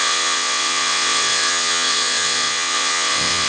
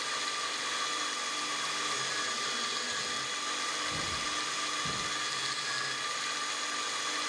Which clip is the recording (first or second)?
second